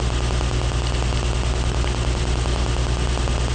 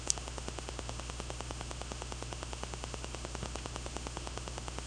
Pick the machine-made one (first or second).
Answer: second